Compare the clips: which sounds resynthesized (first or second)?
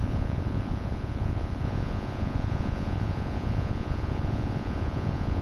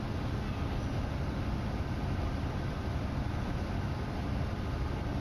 first